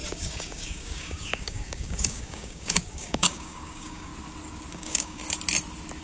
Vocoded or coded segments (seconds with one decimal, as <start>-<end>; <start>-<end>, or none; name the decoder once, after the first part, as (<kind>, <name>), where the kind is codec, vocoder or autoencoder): 0.0-4.1 (codec, DAC); 4.7-5.2